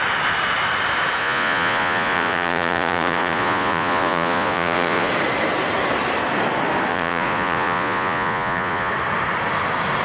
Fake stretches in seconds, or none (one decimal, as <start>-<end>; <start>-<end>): 1.2-5.1; 6.9-8.9

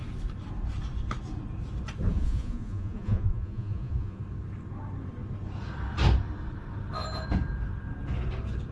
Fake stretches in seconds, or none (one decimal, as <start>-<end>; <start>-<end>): 2.1-4.2

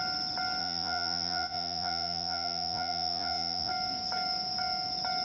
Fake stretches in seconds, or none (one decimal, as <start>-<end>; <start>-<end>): 0.6-3.7

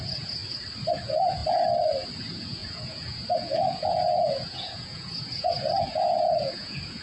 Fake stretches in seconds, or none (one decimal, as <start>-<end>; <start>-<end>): 0.0-0.4; 1.0-1.4; 2.2-7.0

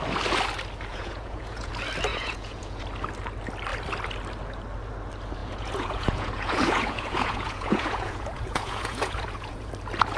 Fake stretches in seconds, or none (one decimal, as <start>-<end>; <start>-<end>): 0.9-1.7; 2.1-2.8; 5.4-9.7

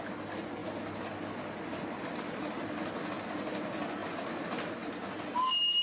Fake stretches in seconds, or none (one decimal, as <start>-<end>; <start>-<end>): none

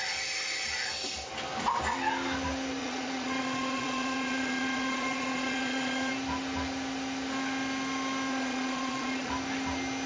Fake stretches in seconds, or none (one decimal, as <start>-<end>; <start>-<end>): 2.8-6.1; 8.3-9.3

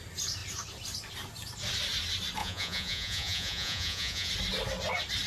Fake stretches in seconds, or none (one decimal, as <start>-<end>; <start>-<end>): 2.4-4.3